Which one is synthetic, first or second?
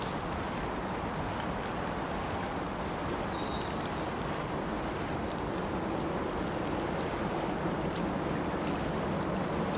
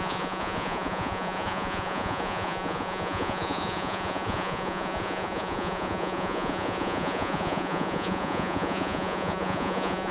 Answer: second